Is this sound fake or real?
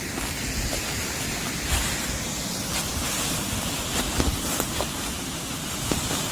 real